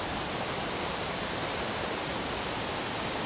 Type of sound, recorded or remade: recorded